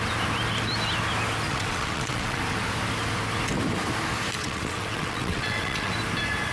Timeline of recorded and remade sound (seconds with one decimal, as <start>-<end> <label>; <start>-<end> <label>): 0.0-1.5 recorded; 1.5-2.4 remade; 2.4-4.4 recorded; 4.4-5.9 remade; 5.9-6.5 recorded